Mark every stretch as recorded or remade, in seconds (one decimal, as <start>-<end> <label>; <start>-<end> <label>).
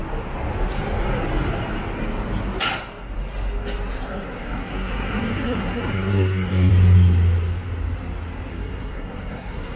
0.0-4.1 recorded; 4.1-6.7 remade; 6.7-8.5 recorded; 8.5-9.8 remade